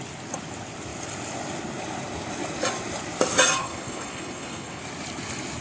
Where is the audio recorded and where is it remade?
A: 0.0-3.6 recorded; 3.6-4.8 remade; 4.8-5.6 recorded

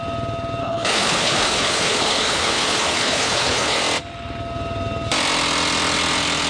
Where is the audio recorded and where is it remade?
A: 0.0-0.6 recorded; 0.6-3.8 remade; 3.8-6.5 recorded